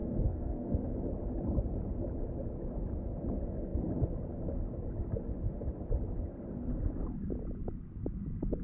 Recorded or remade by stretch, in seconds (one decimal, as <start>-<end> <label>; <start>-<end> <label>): 0.0-0.9 remade; 0.9-8.6 recorded